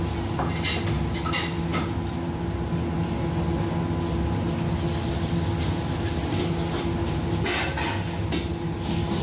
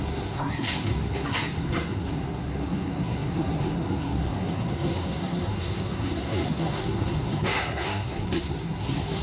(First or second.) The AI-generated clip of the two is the second